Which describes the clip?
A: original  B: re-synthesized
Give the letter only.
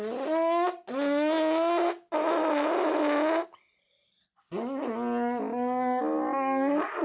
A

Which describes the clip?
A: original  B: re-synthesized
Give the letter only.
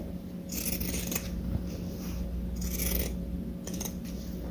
A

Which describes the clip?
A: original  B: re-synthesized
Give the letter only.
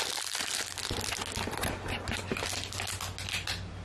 A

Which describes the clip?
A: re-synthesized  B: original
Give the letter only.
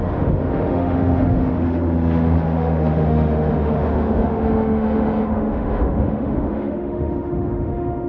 A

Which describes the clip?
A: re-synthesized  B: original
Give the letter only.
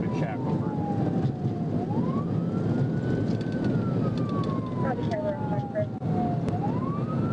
B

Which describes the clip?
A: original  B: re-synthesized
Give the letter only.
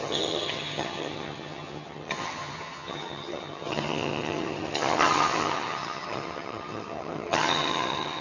B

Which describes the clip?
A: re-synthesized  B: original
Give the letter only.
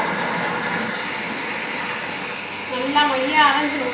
B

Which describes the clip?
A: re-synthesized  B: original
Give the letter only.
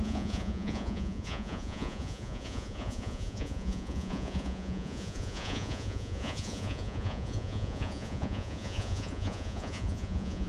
A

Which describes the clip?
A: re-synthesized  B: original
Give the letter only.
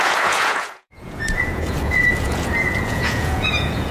A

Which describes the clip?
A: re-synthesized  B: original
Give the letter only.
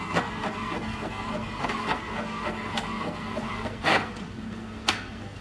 A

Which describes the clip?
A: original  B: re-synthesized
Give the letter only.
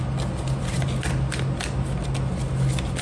A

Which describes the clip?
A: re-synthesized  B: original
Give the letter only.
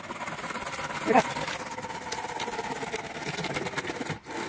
B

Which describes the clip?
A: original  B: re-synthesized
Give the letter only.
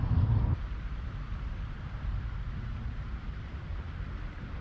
B